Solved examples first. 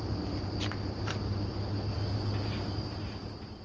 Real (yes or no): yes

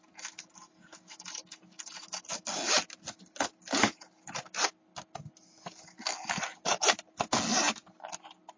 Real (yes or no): yes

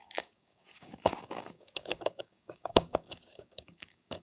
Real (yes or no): no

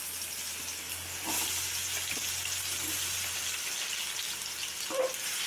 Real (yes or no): yes